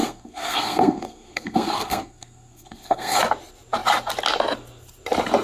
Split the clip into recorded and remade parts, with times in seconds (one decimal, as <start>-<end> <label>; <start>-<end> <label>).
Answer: 0.0-3.2 remade; 3.2-5.4 recorded